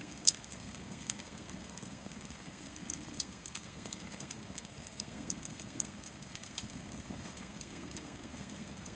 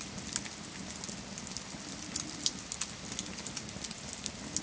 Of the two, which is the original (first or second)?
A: second